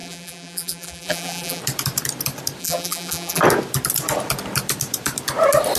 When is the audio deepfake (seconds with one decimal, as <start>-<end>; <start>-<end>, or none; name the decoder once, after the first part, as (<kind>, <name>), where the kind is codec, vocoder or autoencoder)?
0.0-1.6 (vocoder, BigVGAN v2); 2.6-3.4